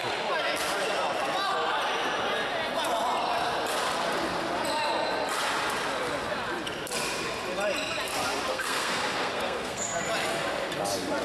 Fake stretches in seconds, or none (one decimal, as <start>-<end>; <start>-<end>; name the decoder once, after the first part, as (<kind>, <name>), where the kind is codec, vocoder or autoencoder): 8.5-10.0 (codec, SNAC)